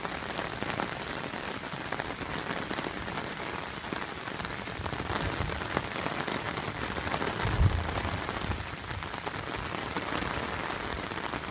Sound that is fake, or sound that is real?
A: real